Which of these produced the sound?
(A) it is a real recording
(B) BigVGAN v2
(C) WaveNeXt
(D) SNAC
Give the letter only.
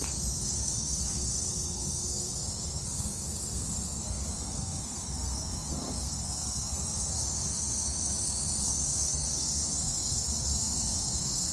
D